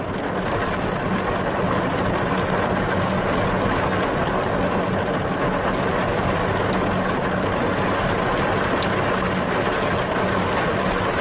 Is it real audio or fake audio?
real